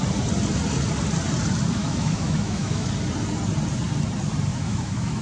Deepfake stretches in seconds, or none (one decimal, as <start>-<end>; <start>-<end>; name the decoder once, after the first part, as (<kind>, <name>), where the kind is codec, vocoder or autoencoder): 1.8-2.9 (autoencoder, DAC-VAE); 4.5-5.2